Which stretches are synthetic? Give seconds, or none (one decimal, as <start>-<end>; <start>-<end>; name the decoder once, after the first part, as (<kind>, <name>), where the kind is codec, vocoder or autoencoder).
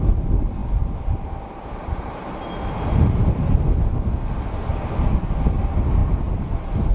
none